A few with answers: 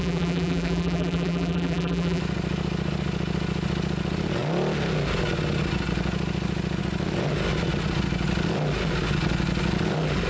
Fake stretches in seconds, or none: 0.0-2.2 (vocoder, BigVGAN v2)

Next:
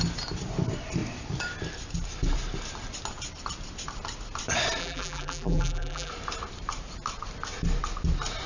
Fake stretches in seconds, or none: 4.8-6.1 (vocoder, BigVGAN v2)

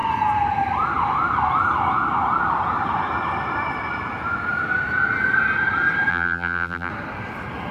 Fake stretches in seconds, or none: 6.1-6.9 (vocoder, BigVGAN v2)

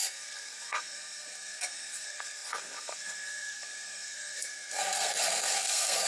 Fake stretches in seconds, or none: 0.0-6.1 (codec, SNAC)

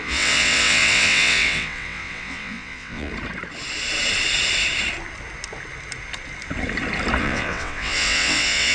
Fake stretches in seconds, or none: 0.0-3.1 (vocoder, WaveNeXt); 7.2-8.7

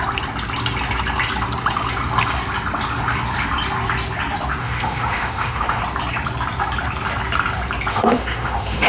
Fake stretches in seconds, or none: 4.6-5.8 (autoencoder, DAC-VAE); 7.9-8.9

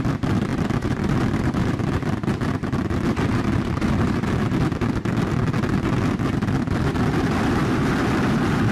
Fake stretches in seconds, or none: 0.0-0.5 (vocoder, BigVGAN v2); 1.7-2.2; 6.7-8.7

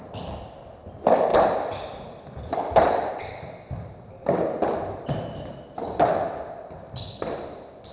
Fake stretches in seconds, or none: none